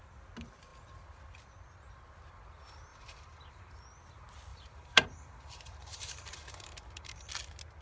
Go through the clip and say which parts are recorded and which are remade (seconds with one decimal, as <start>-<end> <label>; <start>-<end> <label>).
0.0-2.9 recorded; 2.9-3.7 remade; 3.7-4.5 recorded; 4.5-7.3 remade; 7.3-7.8 recorded